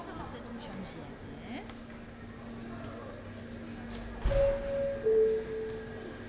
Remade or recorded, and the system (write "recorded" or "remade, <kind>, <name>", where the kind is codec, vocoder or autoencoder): recorded